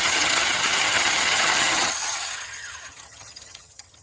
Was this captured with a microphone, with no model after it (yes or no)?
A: no